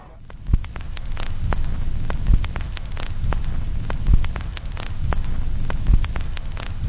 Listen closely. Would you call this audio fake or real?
real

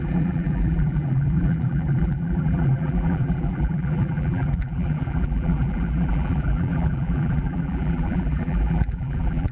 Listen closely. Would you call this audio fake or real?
fake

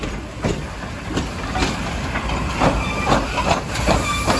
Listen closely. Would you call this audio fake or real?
real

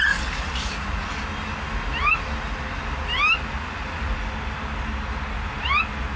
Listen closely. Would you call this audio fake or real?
real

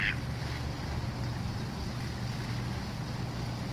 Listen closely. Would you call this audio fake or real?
real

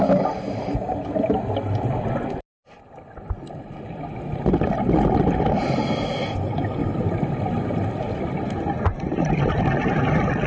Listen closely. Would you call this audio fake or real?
real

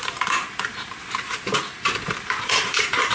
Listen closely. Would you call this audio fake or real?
fake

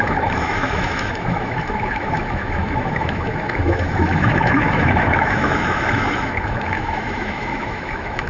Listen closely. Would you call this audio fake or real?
fake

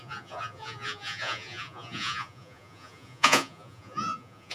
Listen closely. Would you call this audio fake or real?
fake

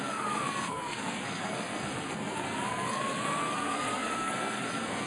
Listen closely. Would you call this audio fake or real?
fake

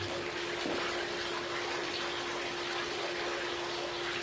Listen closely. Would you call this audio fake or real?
fake